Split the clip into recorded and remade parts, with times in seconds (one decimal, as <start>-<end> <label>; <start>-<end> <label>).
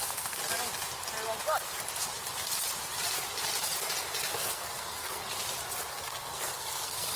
0.0-0.4 remade; 0.4-4.3 recorded; 4.3-5.2 remade; 5.2-5.9 recorded; 5.9-7.2 remade